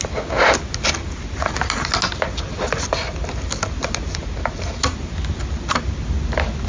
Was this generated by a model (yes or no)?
no